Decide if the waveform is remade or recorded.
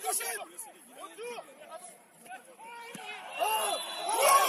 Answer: remade